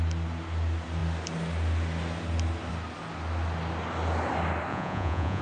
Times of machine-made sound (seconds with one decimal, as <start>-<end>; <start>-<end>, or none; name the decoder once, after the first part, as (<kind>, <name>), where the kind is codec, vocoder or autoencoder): 4.7-5.4 (vocoder, Vocos)